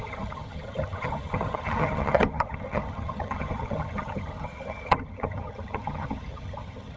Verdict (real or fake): fake